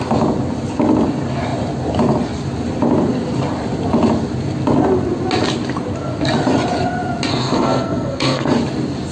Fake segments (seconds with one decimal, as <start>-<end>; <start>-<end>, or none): 7.3-8.5